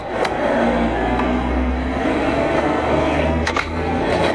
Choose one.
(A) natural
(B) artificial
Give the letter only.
B